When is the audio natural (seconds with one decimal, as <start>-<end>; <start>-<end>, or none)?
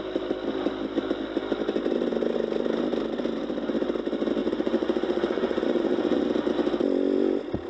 0.0-4.4; 6.2-7.7